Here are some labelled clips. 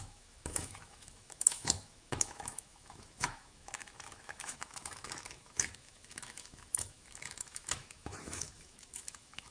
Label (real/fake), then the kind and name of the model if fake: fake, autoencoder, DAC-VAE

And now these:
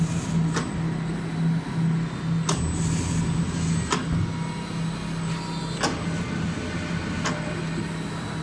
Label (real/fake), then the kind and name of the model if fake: real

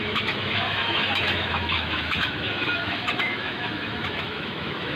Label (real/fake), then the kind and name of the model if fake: fake, autoencoder, DAC-VAE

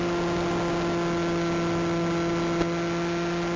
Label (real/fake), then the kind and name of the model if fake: real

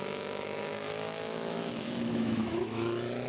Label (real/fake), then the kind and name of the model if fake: fake, autoencoder, DAC-VAE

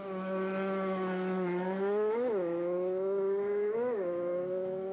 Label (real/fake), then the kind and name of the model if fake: fake, autoencoder, DAC-VAE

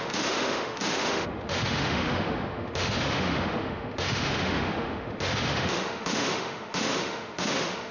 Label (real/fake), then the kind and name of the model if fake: fake, autoencoder, DAC-VAE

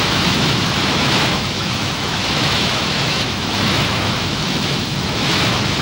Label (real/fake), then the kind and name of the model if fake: fake, autoencoder, DAC-VAE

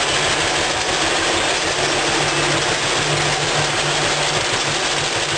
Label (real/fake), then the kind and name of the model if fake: real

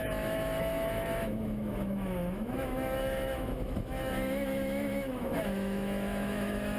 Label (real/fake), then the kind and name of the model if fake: fake, autoencoder, DAC-VAE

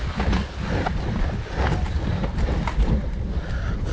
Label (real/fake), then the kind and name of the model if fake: real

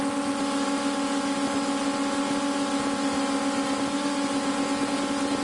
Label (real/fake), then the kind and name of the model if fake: real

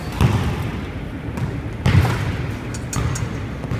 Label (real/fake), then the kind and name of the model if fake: real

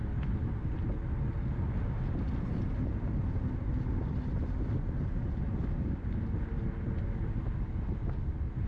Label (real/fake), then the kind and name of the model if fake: real